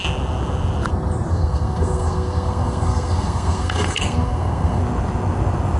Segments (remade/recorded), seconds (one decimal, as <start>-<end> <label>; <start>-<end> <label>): 0.0-1.3 recorded; 1.3-4.8 remade; 4.8-5.8 recorded